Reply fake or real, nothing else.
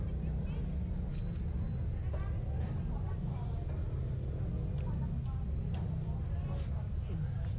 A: real